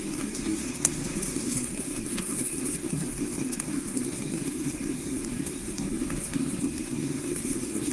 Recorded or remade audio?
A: remade